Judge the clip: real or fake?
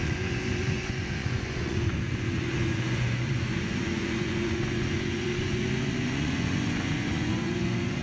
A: fake